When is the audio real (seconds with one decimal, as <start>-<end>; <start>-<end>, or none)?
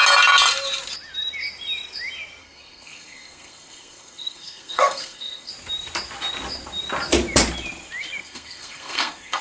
0.0-2.4; 5.5-8.2